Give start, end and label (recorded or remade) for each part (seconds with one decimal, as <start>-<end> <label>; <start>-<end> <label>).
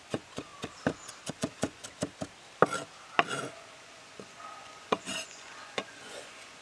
0.0-0.5 remade; 0.5-1.3 recorded; 1.3-1.8 remade; 1.8-3.4 recorded; 3.4-6.6 remade